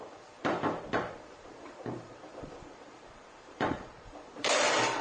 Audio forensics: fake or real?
fake